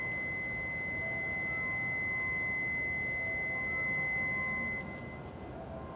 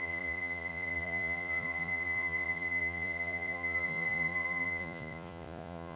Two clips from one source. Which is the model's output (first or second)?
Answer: second